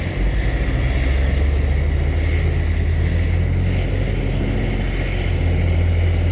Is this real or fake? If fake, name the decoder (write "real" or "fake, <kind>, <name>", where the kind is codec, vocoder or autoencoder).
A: real